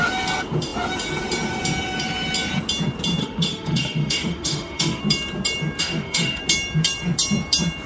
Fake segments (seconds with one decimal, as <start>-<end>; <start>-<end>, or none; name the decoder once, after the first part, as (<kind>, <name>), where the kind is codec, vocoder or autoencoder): 3.2-5.0 (autoencoder, DAC-VAE); 5.8-6.4

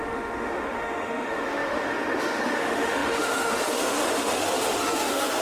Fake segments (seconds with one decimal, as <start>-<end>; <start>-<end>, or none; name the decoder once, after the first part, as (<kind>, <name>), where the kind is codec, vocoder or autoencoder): 0.0-5.4 (autoencoder, DAC-VAE)

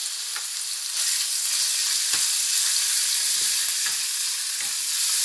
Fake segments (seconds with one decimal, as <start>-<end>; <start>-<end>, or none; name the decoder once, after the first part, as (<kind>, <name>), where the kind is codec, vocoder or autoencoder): none

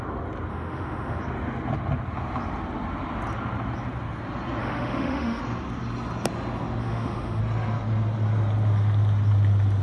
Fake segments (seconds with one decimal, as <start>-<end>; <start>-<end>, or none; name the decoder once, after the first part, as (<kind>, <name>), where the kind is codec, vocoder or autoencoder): 0.5-1.2 (autoencoder, DAC-VAE); 4.6-5.4; 6.8-7.4

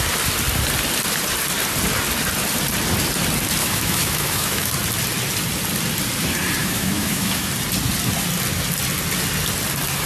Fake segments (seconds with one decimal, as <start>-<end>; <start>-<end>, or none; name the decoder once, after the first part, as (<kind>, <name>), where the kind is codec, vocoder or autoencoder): 3.6-4.7 (autoencoder, DAC-VAE); 6.6-7.5

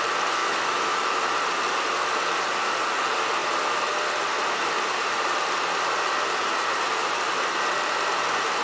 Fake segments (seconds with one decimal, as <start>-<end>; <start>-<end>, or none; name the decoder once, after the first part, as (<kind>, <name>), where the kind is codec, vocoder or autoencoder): 0.4-1.2 (autoencoder, DAC-VAE)

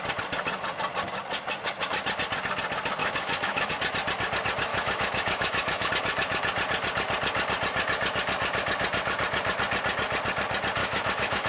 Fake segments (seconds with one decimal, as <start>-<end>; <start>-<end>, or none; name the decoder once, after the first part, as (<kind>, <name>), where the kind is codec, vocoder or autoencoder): 3.0-3.7 (autoencoder, DAC-VAE); 4.7-5.9; 10.8-11.5

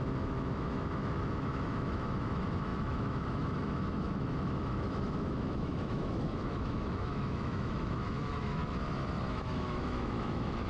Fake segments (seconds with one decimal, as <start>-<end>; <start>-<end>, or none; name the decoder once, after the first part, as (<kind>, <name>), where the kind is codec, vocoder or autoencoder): 0.0-8.6 (autoencoder, DAC-VAE); 9.3-10.7